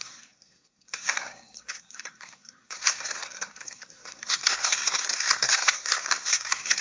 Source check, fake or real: fake